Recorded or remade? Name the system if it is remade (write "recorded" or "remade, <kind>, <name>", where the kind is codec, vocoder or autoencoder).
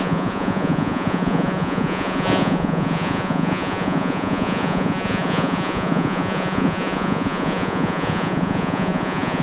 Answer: remade, vocoder, Vocos